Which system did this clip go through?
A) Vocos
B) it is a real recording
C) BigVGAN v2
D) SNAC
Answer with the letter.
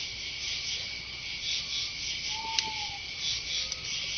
B